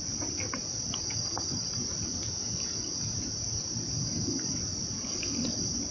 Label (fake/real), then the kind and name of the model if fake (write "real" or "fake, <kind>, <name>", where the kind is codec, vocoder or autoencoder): real